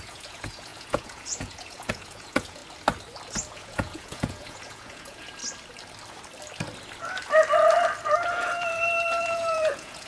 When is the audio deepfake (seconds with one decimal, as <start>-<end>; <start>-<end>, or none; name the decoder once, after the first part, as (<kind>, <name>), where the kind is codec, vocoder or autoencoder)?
0.0-2.6 (vocoder, Vocos); 3.5-5.4; 8.3-10.1

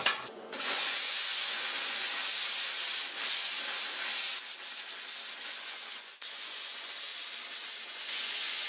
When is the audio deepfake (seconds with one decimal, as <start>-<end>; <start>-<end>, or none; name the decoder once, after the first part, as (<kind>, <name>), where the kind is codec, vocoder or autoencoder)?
0.0-2.1 (vocoder, Vocos); 5.3-7.1; 7.9-8.7

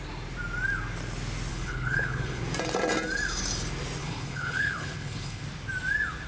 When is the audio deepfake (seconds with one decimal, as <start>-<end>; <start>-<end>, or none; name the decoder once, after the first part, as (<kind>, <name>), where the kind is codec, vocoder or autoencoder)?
1.5-2.4 (codec, HILCodec); 4.0-5.4

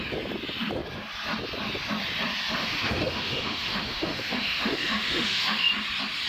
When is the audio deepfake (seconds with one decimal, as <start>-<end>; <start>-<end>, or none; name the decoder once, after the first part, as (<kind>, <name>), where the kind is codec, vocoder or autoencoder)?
2.6-5.7 (autoencoder, DAC-VAE)

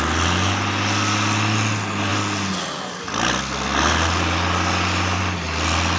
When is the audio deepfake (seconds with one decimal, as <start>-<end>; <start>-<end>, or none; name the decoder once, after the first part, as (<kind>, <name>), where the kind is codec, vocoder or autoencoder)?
none

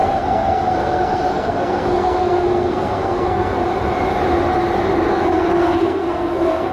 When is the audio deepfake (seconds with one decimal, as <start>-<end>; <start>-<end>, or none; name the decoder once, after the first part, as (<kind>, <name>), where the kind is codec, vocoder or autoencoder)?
0.0-3.6 (codec, SNAC); 5.1-6.7